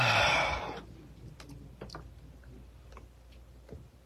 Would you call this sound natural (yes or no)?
yes